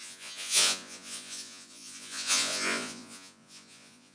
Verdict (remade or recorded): remade